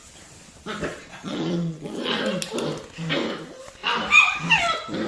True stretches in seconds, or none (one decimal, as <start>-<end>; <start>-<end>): 0.0-0.9; 2.1-5.1